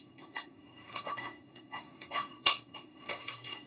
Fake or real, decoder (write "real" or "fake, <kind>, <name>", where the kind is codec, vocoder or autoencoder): fake, codec, SNAC